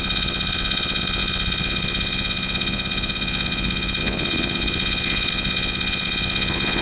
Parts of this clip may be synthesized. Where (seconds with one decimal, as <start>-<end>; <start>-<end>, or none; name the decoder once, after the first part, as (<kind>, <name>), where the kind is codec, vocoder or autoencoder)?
0.0-6.8 (vocoder, Vocos)